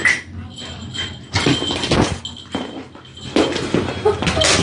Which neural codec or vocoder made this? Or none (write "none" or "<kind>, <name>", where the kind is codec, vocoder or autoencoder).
none